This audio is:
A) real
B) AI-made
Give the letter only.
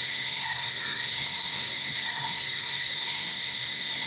B